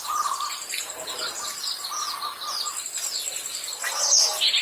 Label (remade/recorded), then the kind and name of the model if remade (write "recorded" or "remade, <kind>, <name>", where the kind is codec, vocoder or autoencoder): recorded